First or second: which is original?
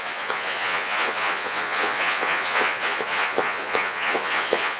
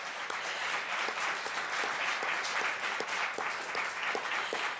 second